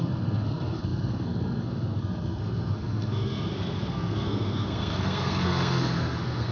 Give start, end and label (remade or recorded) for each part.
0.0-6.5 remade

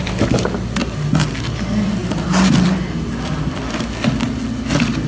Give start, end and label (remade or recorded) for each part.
0.0-0.8 recorded; 0.8-1.3 remade; 1.3-2.0 recorded; 2.0-5.1 remade

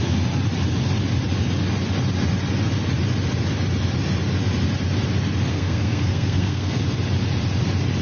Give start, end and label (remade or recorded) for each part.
0.0-5.5 recorded; 5.5-6.8 remade; 6.8-8.0 recorded

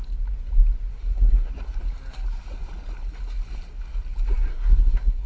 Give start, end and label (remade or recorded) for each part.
0.0-0.9 recorded; 0.9-1.5 remade; 1.5-4.5 recorded; 4.5-5.3 remade

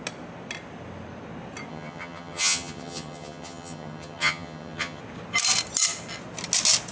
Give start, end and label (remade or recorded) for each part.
0.0-1.7 recorded; 1.7-5.0 remade; 5.0-6.9 recorded

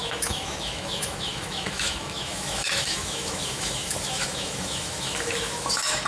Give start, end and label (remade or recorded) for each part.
0.0-6.1 remade

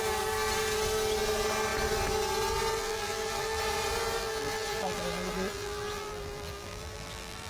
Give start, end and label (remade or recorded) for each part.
0.0-2.7 recorded; 2.7-3.6 remade; 3.6-4.2 recorded; 4.2-7.5 remade

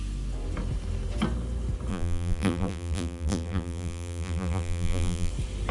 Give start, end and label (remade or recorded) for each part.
0.0-1.9 recorded; 1.9-5.3 remade; 5.3-5.7 recorded